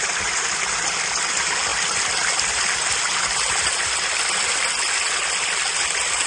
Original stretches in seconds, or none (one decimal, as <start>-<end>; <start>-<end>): 0.0-6.3